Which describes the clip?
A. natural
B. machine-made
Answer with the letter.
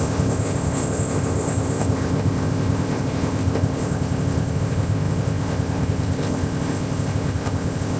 B